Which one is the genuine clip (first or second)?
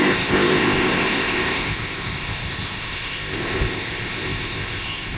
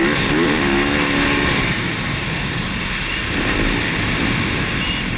second